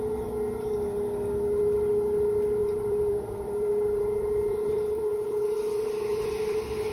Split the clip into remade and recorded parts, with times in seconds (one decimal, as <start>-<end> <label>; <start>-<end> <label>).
0.0-2.6 recorded; 2.6-6.9 remade